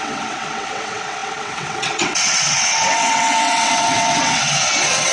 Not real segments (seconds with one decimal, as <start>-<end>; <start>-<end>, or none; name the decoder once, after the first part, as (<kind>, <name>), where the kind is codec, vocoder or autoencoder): 0.0-5.1 (vocoder, WaveNeXt)